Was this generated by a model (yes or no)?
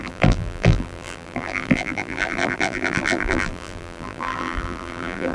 yes